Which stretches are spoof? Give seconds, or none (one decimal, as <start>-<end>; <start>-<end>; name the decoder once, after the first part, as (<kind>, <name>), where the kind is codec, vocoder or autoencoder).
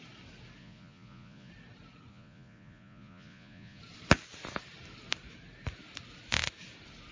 0.6-1.5 (vocoder, Vocos); 2.1-3.8